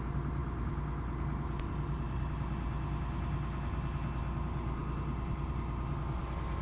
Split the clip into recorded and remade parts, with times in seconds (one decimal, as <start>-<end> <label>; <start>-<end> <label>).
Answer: 0.0-6.6 recorded